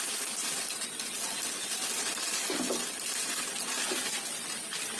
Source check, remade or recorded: remade